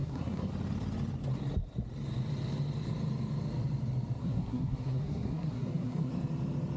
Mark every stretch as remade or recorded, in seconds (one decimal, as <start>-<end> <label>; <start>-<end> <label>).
0.0-0.5 remade; 0.5-4.2 recorded; 4.2-6.1 remade; 6.1-6.8 recorded